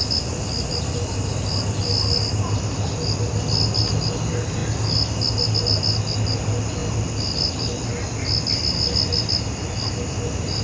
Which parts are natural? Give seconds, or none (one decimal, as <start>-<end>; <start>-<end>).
0.0-10.6